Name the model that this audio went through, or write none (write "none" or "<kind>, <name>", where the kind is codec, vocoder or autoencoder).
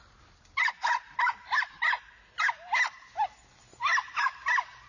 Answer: none